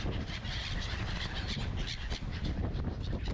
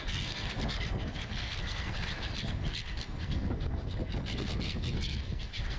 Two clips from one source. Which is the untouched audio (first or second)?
first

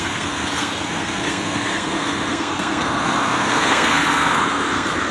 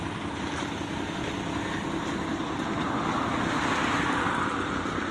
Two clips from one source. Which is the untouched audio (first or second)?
second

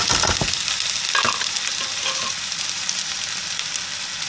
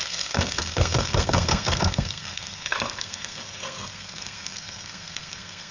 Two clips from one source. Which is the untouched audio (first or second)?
first